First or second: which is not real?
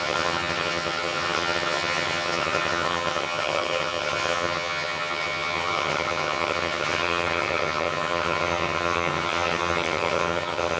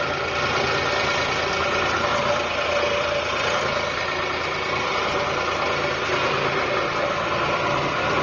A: first